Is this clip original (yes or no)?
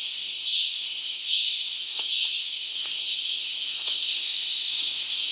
no